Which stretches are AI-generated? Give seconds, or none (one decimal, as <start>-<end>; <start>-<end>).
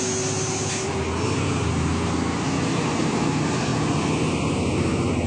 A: none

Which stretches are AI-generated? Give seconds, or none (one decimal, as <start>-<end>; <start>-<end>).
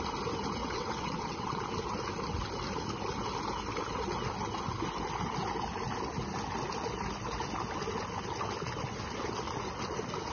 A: 0.6-1.6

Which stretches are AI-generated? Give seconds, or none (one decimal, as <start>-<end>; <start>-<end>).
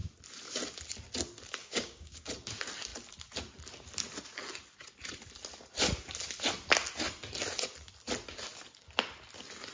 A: 1.6-2.3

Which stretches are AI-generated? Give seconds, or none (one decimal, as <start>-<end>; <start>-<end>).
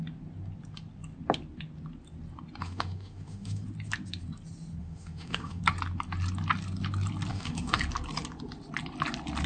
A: 2.6-3.6; 4.8-5.6; 7.3-7.8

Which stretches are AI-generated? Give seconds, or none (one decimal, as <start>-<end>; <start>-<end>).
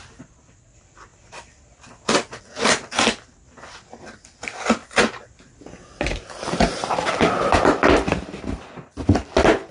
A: 0.0-4.8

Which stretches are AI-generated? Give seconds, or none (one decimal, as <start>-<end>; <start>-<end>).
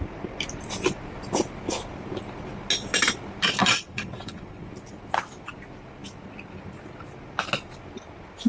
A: 3.6-4.7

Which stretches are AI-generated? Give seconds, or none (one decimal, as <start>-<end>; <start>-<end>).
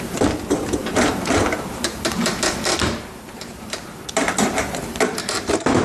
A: 0.0-5.8